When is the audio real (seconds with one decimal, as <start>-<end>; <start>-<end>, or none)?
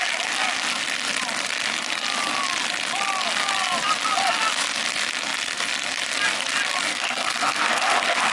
0.0-6.9